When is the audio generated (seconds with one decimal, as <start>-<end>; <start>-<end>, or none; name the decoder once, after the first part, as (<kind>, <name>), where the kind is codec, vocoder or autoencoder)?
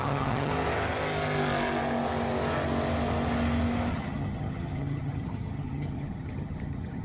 0.0-0.5 (vocoder, HiFi-GAN); 3.9-7.0